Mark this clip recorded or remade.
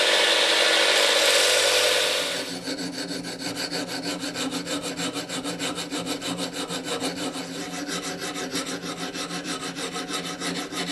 recorded